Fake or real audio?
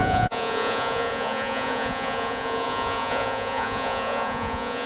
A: fake